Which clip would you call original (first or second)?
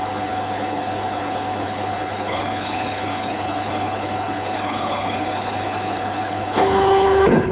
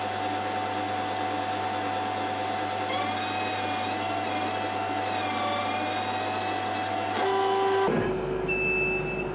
second